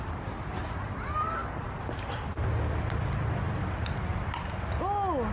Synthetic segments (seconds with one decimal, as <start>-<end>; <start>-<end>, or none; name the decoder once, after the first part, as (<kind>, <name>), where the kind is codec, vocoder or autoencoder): none